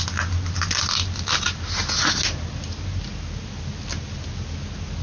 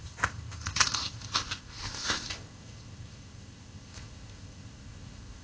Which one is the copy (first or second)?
second